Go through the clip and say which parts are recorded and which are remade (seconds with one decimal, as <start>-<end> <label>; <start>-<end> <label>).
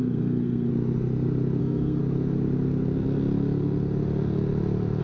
0.0-0.7 remade; 0.7-1.6 recorded; 1.6-2.0 remade; 2.0-5.0 recorded